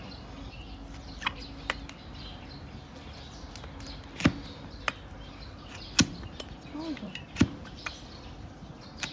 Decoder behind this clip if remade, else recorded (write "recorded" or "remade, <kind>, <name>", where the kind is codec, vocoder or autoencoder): recorded